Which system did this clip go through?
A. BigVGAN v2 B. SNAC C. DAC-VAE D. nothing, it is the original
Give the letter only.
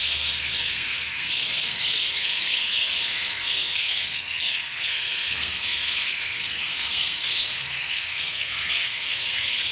B